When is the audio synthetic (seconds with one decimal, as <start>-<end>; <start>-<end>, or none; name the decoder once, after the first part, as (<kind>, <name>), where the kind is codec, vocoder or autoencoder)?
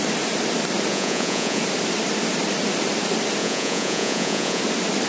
0.9-1.6 (vocoder, Vocos); 3.4-4.6